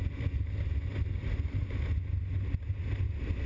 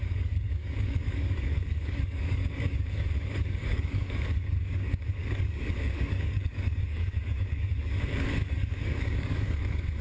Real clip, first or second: first